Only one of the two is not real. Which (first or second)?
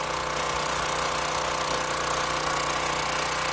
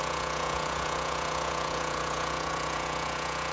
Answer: second